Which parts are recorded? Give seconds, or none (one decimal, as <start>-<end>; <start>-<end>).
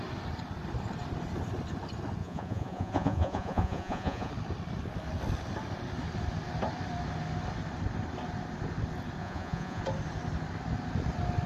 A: 0.0-2.2; 4.3-9.2; 9.8-11.5